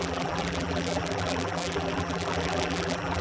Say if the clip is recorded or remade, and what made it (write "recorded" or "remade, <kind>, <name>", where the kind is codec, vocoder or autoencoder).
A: remade, vocoder, BigVGAN v2